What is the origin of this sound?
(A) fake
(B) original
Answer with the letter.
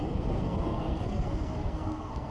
A